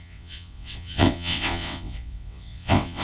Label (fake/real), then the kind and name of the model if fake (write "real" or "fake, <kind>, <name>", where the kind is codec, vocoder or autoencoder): fake, vocoder, WaveNeXt